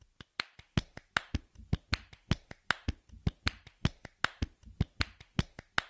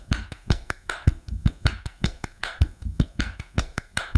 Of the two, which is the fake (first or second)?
second